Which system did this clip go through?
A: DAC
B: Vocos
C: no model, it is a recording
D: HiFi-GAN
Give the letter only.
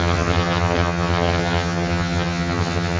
D